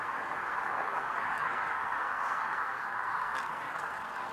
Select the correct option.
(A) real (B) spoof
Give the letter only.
B